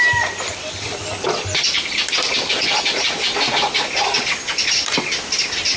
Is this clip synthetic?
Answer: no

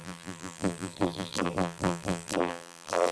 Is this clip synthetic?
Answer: yes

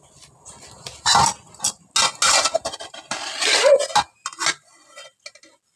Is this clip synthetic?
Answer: no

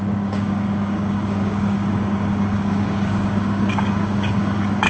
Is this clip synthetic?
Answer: yes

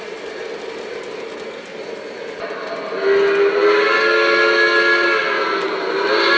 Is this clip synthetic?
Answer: no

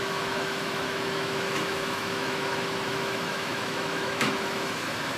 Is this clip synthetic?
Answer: yes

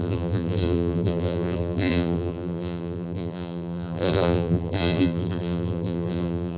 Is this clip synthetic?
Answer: yes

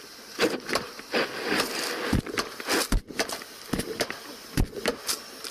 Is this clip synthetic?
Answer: no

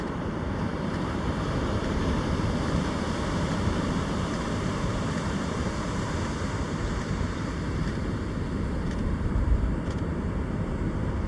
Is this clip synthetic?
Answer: yes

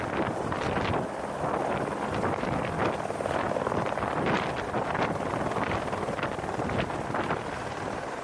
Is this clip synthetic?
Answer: no